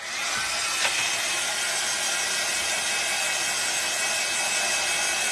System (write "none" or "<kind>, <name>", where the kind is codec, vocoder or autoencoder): none